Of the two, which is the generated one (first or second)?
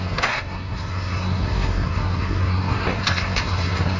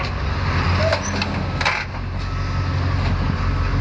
first